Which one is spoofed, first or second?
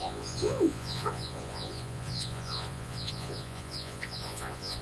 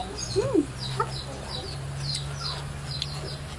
first